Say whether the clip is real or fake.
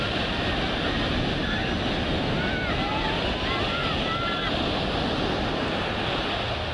real